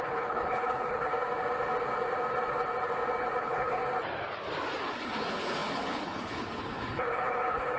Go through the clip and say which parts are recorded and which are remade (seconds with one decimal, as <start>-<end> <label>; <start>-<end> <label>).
0.0-1.1 remade; 1.1-3.4 recorded; 3.4-3.8 remade; 3.8-4.8 recorded; 4.8-7.8 remade